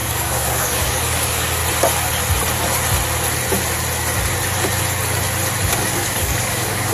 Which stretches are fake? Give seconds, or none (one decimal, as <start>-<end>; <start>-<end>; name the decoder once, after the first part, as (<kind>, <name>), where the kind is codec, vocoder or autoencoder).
0.0-1.6 (codec, DAC); 5.7-6.9